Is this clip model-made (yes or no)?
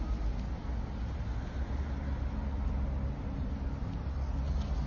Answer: no